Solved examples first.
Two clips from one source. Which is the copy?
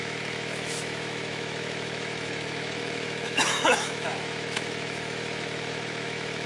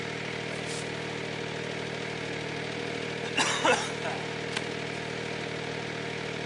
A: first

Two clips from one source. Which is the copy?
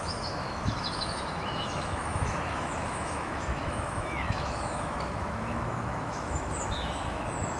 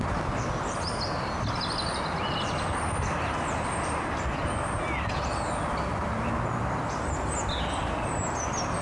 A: first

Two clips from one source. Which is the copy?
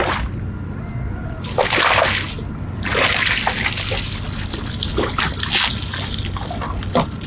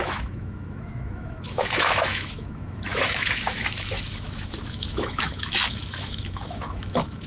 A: second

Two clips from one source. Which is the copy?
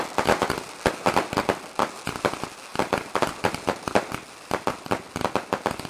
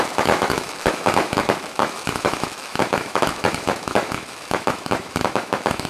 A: second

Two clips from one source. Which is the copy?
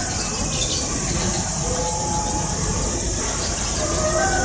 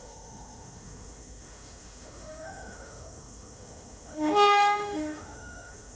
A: second